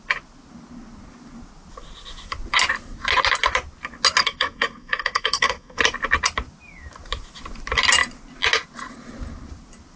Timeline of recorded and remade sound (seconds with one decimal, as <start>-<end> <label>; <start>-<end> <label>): 0.0-4.2 recorded; 4.2-5.8 remade; 5.8-10.0 recorded